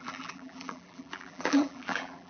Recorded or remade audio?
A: remade